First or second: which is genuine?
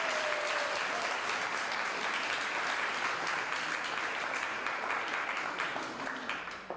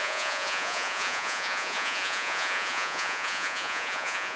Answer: first